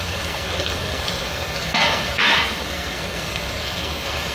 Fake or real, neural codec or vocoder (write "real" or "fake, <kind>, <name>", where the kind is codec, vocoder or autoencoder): fake, codec, SNAC